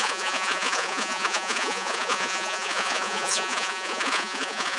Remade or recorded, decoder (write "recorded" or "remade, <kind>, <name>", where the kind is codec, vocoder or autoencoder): remade, vocoder, Vocos